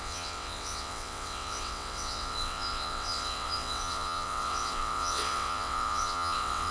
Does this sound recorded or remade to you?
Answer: remade